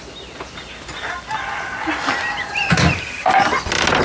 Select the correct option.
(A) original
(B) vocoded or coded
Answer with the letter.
A